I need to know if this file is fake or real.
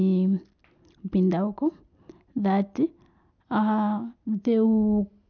real